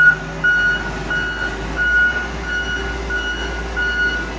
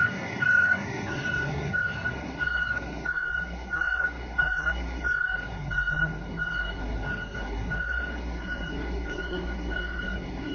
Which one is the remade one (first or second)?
second